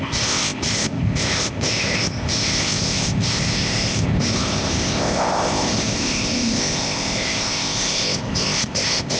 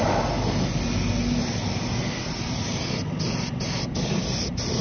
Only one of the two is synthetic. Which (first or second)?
first